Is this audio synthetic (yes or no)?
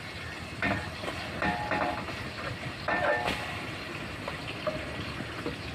no